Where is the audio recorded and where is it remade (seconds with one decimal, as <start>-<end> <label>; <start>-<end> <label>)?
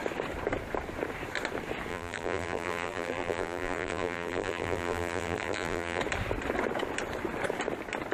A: 0.0-1.9 recorded; 1.9-6.0 remade; 6.0-8.1 recorded